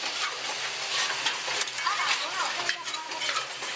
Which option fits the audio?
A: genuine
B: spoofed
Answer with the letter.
A